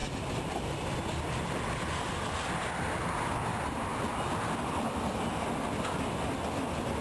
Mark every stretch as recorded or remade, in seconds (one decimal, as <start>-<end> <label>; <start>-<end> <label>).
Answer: 0.0-7.0 recorded